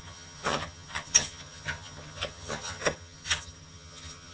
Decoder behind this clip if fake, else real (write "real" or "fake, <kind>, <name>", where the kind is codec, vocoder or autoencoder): fake, vocoder, HiFi-GAN